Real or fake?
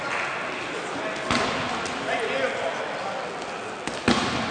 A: real